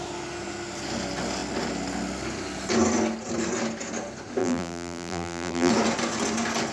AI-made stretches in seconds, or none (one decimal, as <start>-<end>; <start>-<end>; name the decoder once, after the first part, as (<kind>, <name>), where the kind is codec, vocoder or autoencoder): 4.4-5.7 (vocoder, BigVGAN v2)